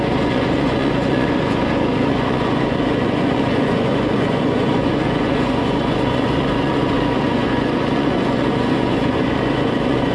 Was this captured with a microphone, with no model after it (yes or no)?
no